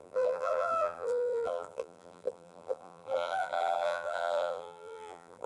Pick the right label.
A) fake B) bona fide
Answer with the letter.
A